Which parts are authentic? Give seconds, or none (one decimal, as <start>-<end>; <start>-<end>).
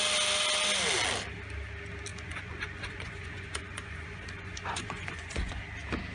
0.0-2.1; 5.6-6.1